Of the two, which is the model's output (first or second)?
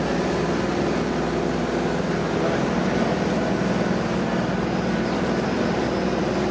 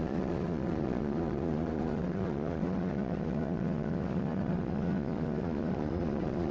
second